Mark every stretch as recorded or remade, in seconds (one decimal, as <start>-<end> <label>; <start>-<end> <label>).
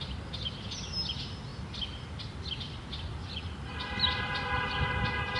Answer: 0.0-5.4 recorded